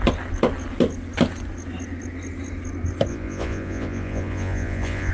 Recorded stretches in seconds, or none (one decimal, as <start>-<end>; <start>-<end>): 0.0-3.1